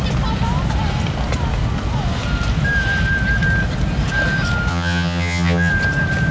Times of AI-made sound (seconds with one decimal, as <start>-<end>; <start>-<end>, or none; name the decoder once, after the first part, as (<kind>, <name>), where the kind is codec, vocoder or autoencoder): 4.7-5.7 (vocoder, HiFi-GAN)